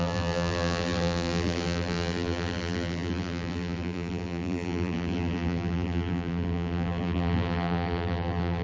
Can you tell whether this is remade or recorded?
remade